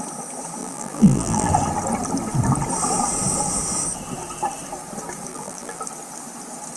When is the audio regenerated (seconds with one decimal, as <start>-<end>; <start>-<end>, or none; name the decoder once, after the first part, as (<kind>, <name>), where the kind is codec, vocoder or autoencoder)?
0.6-1.5 (vocoder, BigVGAN v2); 5.3-5.8